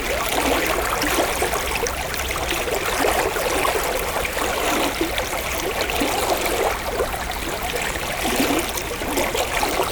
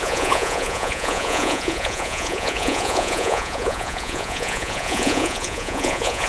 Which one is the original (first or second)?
first